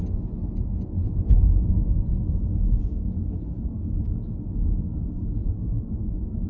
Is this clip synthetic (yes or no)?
no